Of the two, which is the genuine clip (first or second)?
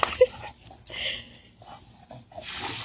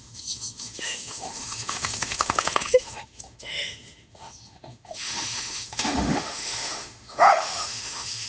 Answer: first